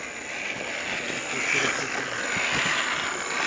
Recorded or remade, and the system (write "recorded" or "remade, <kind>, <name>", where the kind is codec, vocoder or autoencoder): recorded